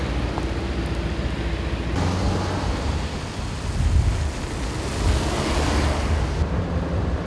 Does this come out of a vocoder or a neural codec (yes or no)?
no